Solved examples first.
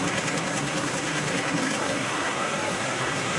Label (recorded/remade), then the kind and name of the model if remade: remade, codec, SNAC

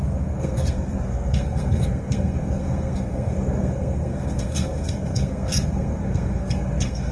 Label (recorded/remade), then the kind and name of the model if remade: remade, codec, SNAC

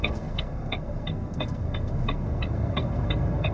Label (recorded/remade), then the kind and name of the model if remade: remade, codec, SNAC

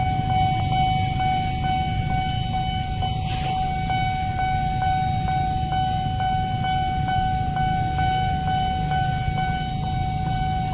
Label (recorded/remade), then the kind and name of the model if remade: recorded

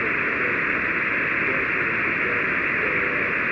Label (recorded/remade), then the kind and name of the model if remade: recorded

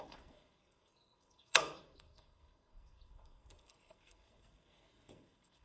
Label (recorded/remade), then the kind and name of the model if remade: remade, codec, SNAC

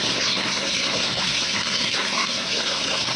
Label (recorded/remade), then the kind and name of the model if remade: remade, codec, SNAC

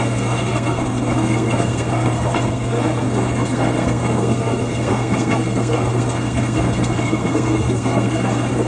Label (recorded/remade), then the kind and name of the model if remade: remade, codec, SNAC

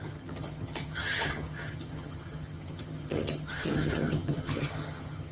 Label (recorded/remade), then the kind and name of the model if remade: remade, vocoder, HiFi-GAN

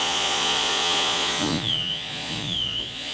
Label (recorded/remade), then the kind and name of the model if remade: remade, vocoder, Vocos